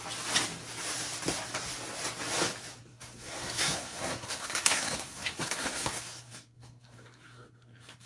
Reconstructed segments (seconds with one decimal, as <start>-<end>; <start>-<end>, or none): 2.9-8.1